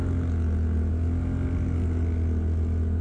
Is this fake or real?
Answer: real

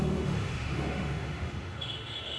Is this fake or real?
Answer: fake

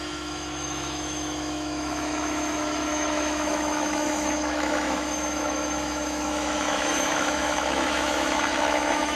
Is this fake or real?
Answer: fake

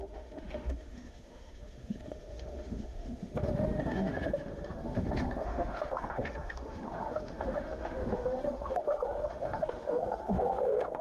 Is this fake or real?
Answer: fake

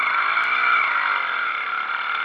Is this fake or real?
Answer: real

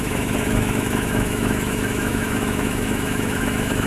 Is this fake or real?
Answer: fake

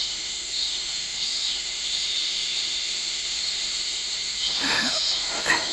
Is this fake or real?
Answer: fake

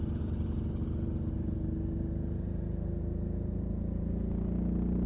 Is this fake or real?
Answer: real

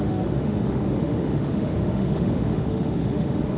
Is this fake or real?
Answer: fake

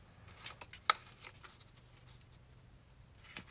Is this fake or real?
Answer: real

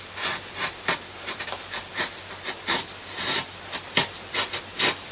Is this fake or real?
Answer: real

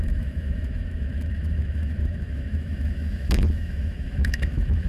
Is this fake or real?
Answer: fake